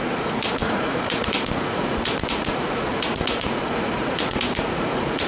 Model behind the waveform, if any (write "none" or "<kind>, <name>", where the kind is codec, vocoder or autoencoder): vocoder, Vocos